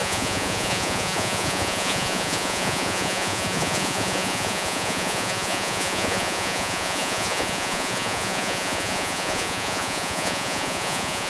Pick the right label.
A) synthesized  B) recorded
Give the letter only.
A